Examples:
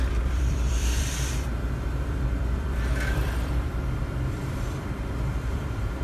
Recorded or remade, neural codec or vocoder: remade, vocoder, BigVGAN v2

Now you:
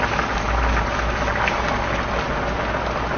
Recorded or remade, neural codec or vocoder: recorded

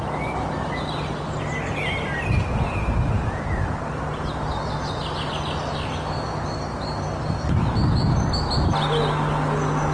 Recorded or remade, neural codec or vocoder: recorded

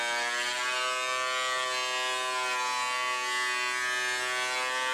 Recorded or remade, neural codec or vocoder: recorded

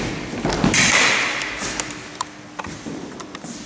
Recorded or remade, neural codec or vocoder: recorded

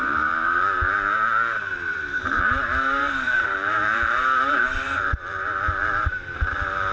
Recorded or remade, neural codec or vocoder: remade, vocoder, BigVGAN v2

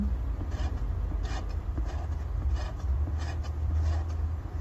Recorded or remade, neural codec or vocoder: remade, vocoder, BigVGAN v2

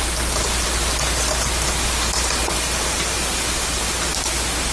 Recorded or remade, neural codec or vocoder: recorded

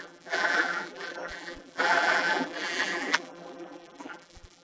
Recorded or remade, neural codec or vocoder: remade, vocoder, BigVGAN v2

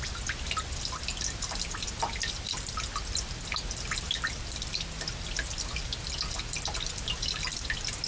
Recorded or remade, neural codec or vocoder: recorded